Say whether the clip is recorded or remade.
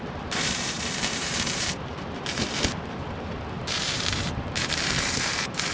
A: remade